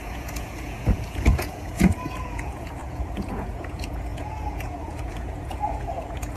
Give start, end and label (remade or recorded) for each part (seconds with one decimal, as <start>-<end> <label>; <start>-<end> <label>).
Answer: 0.0-6.4 remade